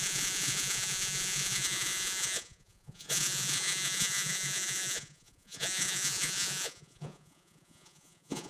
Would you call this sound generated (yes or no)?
yes